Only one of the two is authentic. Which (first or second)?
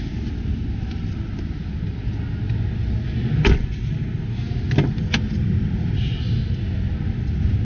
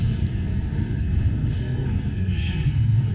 first